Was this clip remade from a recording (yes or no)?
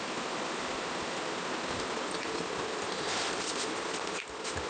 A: no